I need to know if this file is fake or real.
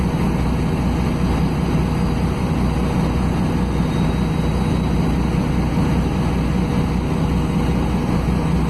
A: real